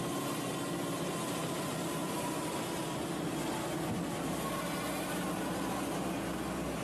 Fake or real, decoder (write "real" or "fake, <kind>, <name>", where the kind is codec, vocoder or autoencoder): real